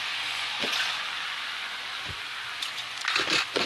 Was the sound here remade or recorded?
remade